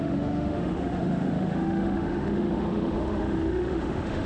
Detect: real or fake fake